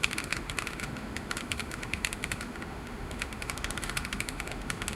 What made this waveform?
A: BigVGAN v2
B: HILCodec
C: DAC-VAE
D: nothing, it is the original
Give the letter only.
C